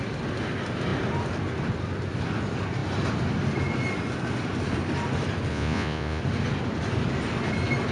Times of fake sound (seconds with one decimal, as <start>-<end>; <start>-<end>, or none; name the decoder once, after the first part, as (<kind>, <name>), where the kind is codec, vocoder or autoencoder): 5.5-6.2 (vocoder, Vocos)